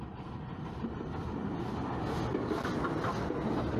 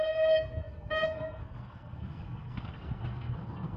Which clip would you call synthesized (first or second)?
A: second